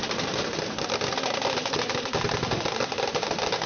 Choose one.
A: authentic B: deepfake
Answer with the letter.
A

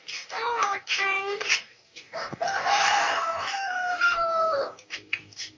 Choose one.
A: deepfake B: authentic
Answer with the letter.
A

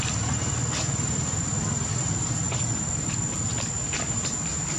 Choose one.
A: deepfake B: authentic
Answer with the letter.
B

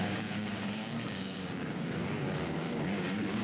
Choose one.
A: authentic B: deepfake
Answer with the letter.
B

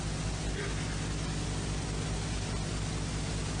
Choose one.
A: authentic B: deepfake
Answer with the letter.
A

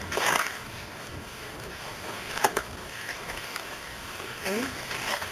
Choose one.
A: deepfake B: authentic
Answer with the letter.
A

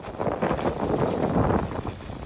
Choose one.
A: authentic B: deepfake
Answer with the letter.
A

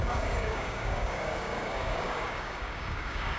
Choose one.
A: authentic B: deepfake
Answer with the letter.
B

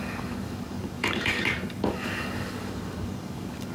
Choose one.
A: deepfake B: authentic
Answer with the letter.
A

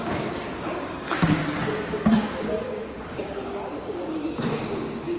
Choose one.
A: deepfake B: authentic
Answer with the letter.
A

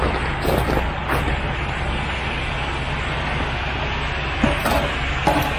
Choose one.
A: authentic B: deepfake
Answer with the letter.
A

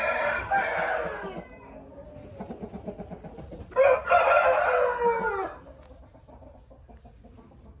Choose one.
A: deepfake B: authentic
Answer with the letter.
B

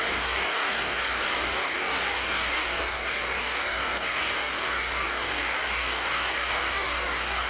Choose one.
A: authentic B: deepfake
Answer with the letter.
B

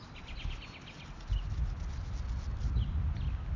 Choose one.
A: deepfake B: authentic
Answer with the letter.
B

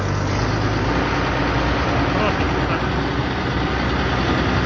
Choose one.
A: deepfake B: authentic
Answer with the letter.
B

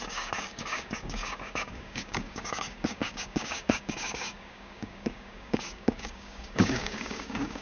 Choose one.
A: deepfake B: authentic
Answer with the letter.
A